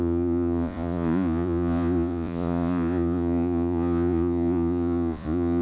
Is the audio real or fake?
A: fake